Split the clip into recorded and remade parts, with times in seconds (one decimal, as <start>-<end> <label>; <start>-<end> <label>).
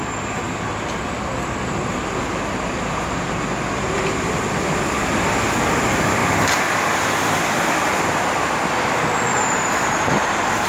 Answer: 0.0-10.7 recorded